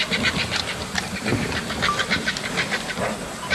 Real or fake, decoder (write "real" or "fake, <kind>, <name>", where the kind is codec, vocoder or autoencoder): real